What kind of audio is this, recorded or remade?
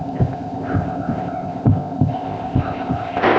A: remade